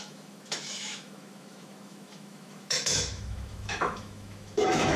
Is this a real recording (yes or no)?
no